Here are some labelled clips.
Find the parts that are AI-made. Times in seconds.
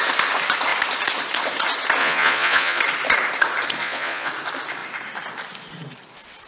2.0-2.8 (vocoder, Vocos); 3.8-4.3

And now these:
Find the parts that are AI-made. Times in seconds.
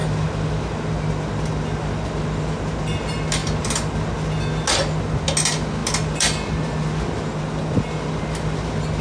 none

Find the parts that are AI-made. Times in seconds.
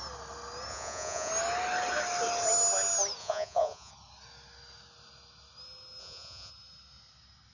0.7-1.3 (vocoder, Vocos); 3.2-3.9; 6.0-6.5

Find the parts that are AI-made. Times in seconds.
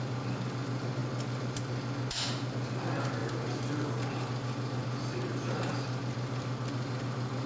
none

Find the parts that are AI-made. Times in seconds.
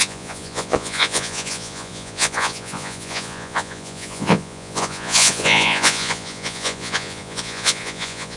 0.0-8.4 (vocoder, Vocos)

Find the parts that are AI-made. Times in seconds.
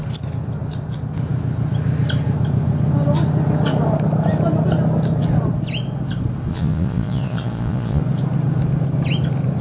6.5-8.0 (vocoder, Vocos)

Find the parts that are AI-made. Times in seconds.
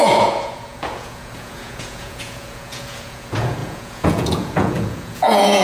0.0-5.6 (vocoder, Vocos)